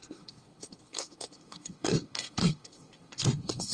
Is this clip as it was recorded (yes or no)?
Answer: no